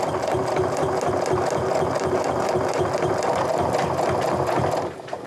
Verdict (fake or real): real